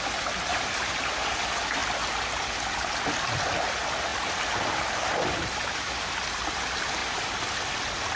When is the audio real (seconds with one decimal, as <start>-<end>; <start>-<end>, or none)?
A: 0.0-0.5; 1.0-4.1; 6.1-7.0; 7.6-8.2